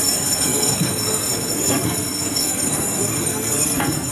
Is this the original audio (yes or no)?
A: no